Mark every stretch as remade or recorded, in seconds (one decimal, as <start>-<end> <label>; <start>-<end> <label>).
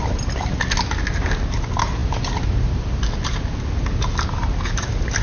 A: 0.0-5.2 recorded